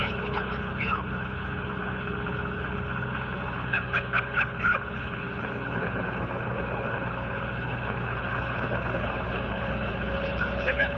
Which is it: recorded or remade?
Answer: remade